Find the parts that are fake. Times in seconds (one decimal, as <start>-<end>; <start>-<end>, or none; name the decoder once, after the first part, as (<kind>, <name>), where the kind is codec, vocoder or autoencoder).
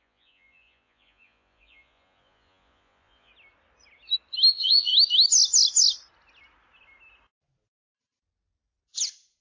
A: 0.0-3.3 (vocoder, Vocos); 4.5-4.9